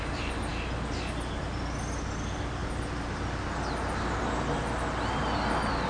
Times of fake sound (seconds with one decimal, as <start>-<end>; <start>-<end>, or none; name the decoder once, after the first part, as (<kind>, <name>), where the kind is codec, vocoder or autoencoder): none